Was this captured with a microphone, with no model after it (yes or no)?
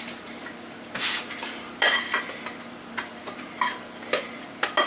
no